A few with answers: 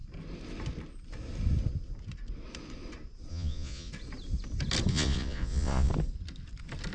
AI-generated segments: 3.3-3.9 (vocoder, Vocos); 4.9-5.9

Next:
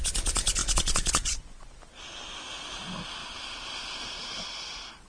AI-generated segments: 0.6-1.8 (vocoder, Vocos)

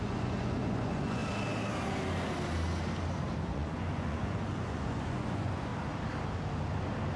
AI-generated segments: 0.0-1.2 (vocoder, Vocos); 3.5-5.7

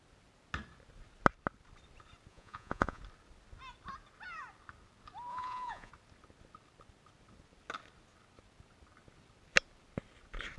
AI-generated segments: 2.3-3.0 (vocoder, Vocos); 5.3-5.9

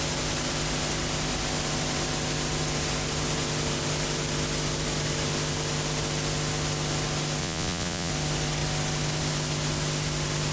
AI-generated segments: 7.4-8.1 (vocoder, Vocos)

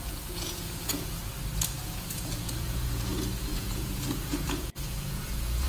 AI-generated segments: 0.0-1.2 (vocoder, Vocos); 1.8-5.7